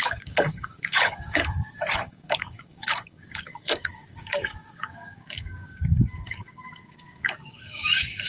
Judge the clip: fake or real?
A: fake